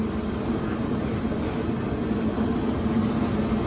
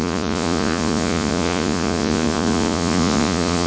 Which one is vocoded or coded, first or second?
second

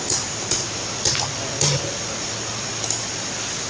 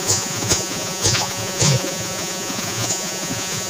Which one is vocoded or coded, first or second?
second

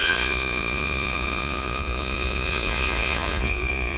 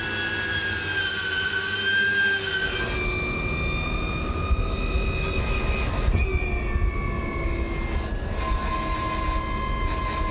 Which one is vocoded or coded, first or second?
first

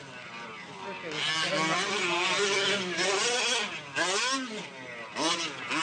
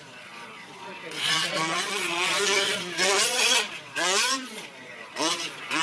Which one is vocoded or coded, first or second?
second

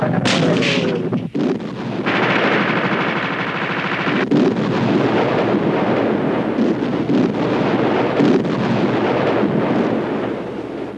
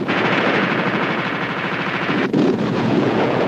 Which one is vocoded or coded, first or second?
second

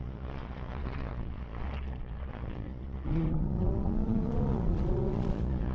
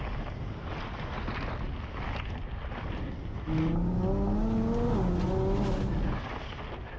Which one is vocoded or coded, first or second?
first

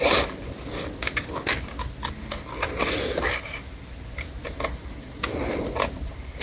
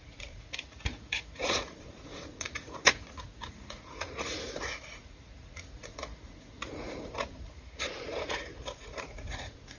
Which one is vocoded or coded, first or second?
second